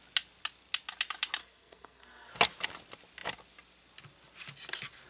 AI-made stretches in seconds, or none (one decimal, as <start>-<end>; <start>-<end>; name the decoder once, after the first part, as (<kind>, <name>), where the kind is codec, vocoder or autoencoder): 1.4-2.3 (codec, SNAC)